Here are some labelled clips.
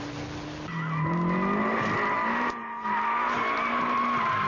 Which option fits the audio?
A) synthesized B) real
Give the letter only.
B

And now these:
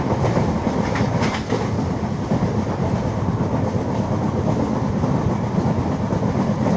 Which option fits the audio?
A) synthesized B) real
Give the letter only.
B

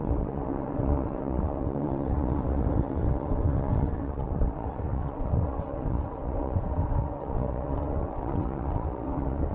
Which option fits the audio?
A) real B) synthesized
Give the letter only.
B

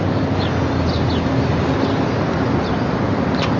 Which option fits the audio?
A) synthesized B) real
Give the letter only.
B